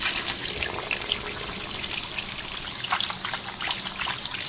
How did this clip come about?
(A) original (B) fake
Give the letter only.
A